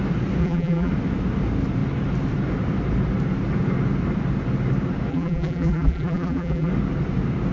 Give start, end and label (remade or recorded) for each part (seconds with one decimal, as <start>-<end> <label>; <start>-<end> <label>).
0.0-0.4 recorded; 0.4-0.9 remade; 0.9-5.1 recorded; 5.1-6.7 remade; 6.7-7.5 recorded